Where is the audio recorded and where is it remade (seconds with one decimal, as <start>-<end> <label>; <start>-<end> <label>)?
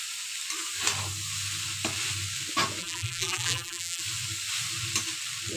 0.0-2.8 recorded; 2.8-4.0 remade; 4.0-5.6 recorded